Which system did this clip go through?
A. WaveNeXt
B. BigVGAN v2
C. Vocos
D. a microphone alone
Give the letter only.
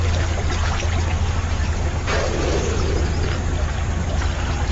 D